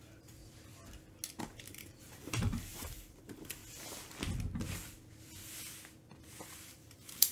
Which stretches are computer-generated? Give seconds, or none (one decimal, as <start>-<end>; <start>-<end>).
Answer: 0.0-0.4; 1.4-3.6; 6.7-7.3